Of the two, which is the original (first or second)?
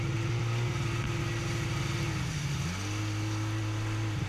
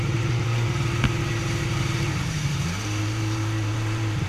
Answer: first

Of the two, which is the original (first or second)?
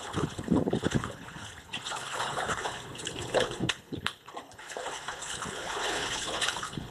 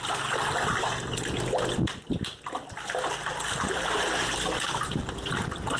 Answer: second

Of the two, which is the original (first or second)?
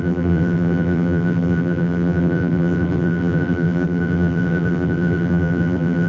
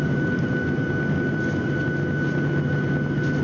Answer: second